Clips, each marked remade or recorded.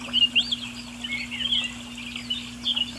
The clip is recorded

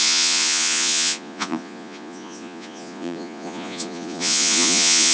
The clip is remade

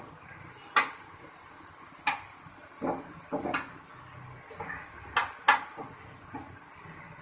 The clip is recorded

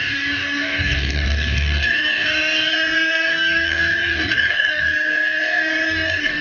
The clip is remade